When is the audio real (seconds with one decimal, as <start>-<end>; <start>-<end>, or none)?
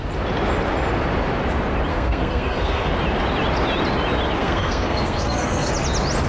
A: 0.0-1.9; 2.9-4.4; 5.7-6.3